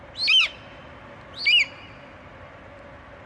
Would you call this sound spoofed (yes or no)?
no